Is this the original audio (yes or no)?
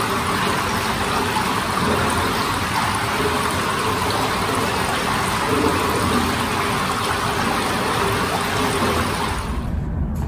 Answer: yes